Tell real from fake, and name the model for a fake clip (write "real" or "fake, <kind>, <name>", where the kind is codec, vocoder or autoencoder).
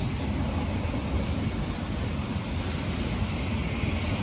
real